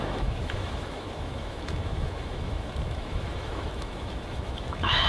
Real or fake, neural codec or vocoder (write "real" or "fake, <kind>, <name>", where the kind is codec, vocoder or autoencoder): fake, autoencoder, DAC-VAE